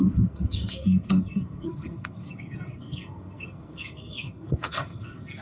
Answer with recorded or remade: remade